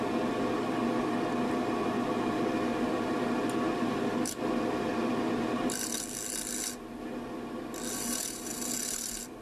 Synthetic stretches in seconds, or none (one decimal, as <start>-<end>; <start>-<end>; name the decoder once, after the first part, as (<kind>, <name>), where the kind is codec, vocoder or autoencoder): none